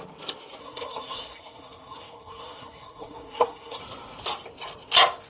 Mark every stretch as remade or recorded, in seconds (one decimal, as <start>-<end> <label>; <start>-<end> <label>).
0.0-0.6 recorded; 0.6-3.8 remade; 3.8-5.3 recorded